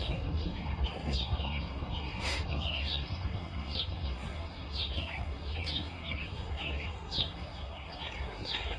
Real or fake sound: fake